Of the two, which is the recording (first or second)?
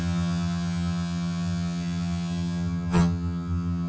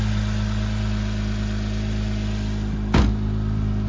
second